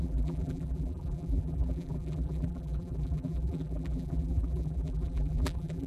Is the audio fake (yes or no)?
yes